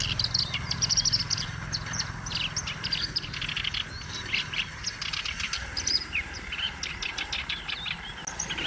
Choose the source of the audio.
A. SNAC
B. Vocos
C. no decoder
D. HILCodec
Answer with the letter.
C